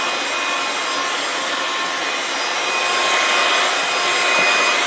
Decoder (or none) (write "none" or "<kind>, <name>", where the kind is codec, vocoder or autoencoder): none